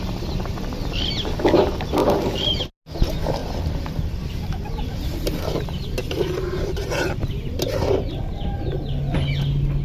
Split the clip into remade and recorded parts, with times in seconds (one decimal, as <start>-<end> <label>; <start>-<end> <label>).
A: 0.0-2.0 recorded; 2.0-2.6 remade; 2.6-3.4 recorded; 3.4-7.1 remade; 7.1-9.8 recorded